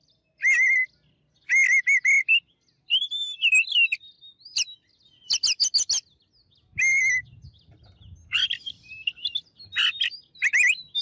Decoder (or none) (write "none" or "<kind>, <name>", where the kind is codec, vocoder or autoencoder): none